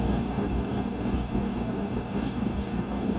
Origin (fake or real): fake